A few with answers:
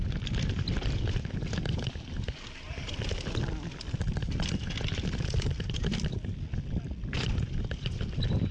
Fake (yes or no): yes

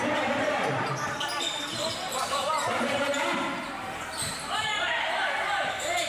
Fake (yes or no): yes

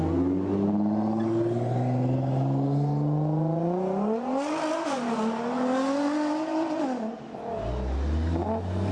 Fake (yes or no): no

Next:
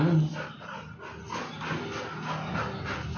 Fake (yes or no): no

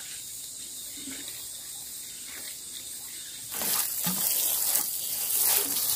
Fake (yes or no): no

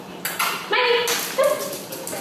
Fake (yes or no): no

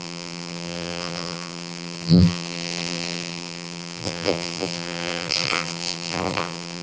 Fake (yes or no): yes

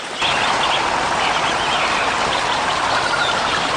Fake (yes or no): yes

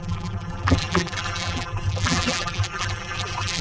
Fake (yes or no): yes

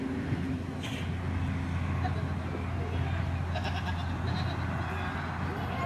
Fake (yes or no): no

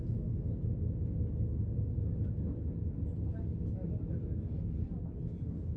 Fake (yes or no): no